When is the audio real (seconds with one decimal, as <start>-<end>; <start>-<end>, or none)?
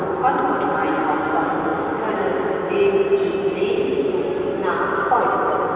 0.0-5.8